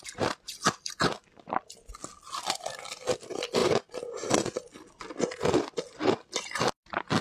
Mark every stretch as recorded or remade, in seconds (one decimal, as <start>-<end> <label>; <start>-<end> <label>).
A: 0.0-7.2 recorded